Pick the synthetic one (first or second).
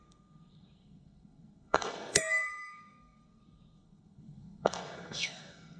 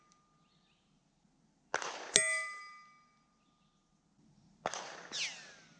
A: first